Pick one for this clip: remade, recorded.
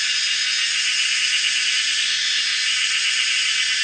recorded